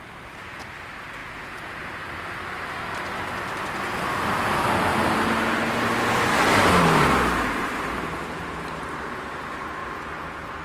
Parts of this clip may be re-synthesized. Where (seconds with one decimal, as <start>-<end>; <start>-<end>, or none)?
1.2-2.0; 9.8-10.6